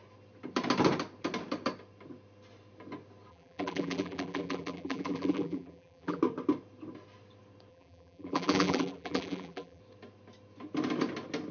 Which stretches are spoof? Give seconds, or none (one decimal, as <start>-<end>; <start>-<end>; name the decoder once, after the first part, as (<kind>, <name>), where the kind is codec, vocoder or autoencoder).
3.3-6.2 (vocoder, BigVGAN v2); 7.7-9.8